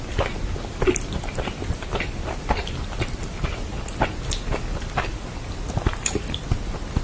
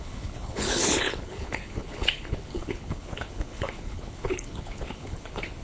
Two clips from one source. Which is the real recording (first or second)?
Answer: first